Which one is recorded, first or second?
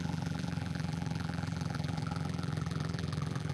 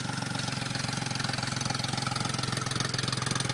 second